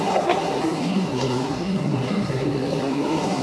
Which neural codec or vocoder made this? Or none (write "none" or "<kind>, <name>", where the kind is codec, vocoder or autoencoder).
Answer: codec, SNAC